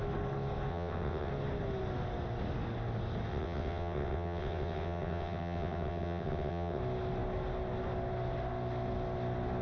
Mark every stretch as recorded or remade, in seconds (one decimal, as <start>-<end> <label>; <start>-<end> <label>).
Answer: 0.0-0.7 recorded; 0.7-1.3 remade; 1.3-3.3 recorded; 3.3-6.8 remade; 6.8-9.6 recorded